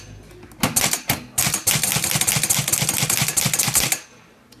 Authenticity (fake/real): real